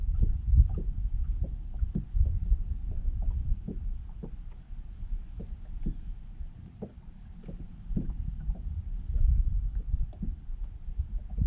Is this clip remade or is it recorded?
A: remade